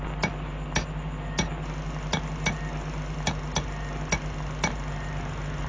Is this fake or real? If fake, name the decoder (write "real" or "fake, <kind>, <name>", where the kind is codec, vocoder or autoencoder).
real